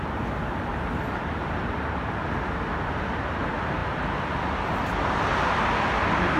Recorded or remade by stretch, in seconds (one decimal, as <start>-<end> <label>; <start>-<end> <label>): 0.0-6.4 recorded